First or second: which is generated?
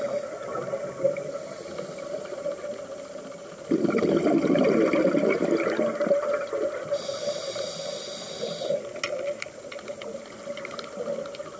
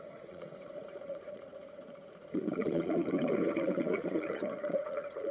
second